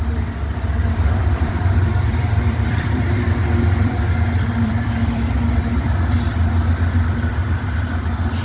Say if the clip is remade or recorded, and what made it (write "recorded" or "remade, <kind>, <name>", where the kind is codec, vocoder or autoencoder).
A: remade, vocoder, BigVGAN v2